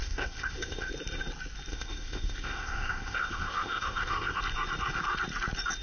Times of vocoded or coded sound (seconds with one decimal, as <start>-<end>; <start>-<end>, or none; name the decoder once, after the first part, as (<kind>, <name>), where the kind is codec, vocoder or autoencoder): 0.0-0.9 (codec, ZipCodec); 1.7-4.4